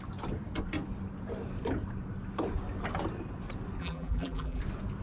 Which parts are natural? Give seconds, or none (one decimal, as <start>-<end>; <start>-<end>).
0.0-3.8; 4.6-5.0

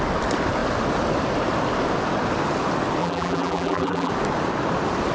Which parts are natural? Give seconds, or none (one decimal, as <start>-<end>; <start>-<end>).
0.0-3.0; 4.1-5.1